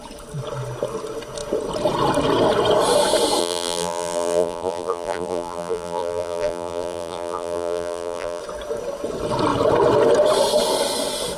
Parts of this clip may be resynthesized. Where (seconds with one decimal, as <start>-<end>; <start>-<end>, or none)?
3.4-8.4